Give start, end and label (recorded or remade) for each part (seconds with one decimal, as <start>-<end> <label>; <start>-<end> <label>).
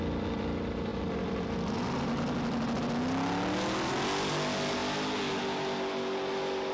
0.0-6.7 recorded